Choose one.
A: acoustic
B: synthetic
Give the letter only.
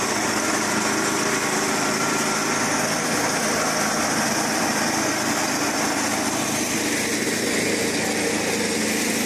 A